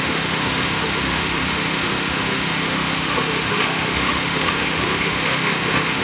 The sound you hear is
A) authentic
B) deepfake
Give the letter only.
B